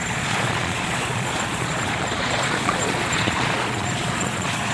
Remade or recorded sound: remade